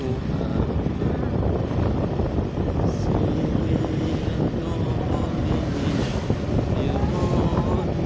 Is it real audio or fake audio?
real